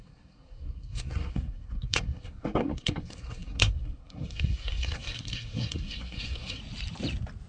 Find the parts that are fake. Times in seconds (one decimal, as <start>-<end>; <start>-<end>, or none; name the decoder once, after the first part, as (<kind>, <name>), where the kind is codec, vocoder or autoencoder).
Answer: 0.0-6.6 (codec, SNAC)